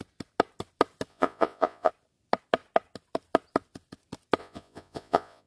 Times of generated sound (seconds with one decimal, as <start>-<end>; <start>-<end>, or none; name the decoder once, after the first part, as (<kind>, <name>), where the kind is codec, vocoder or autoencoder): 1.1-1.9 (vocoder, Vocos); 4.4-5.5